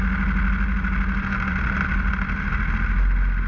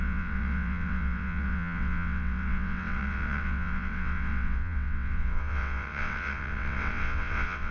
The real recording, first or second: first